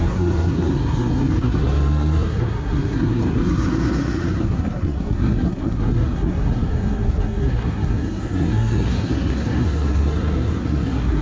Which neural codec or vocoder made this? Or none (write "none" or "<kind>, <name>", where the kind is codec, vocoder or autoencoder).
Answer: codec, SNAC